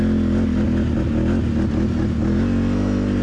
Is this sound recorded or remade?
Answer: recorded